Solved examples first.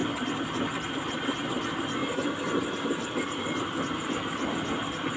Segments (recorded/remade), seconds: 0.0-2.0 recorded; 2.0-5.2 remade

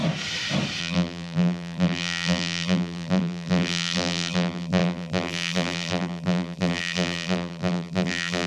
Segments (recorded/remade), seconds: 0.0-0.8 recorded; 0.8-8.5 remade

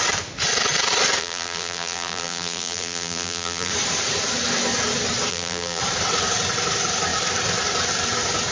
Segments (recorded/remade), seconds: 0.0-1.2 recorded; 1.2-3.7 remade; 3.7-5.3 recorded; 5.3-5.8 remade; 5.8-8.5 recorded